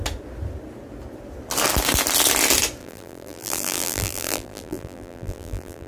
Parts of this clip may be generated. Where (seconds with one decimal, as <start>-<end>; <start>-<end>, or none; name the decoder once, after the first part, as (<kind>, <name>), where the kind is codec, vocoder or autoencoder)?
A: 2.8-5.9 (vocoder, BigVGAN v2)